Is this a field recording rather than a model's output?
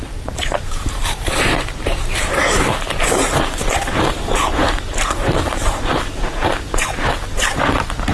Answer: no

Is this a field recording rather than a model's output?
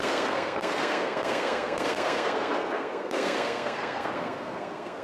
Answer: no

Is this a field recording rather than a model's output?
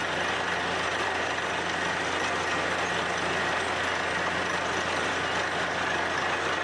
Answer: yes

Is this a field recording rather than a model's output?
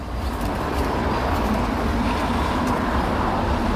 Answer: no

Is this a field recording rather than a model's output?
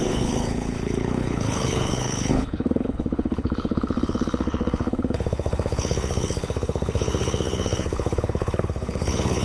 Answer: no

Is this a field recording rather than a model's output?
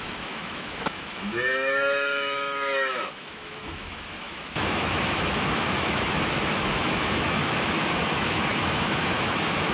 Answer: no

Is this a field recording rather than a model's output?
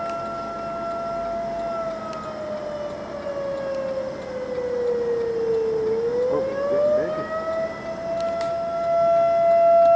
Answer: yes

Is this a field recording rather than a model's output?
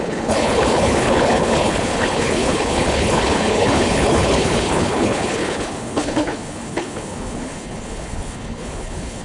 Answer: no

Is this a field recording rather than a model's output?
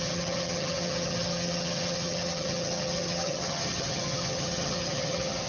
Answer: no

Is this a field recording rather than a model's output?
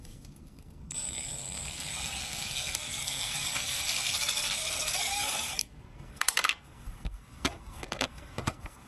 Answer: no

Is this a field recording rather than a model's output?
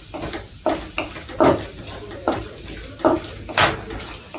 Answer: yes